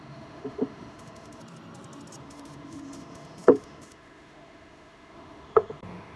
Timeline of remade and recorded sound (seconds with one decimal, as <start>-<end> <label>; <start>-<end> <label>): 0.0-1.4 remade; 1.4-2.2 recorded; 2.2-6.2 remade